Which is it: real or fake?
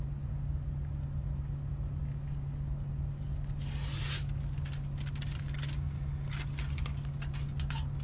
real